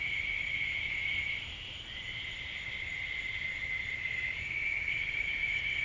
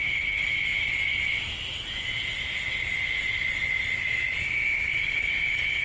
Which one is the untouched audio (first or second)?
second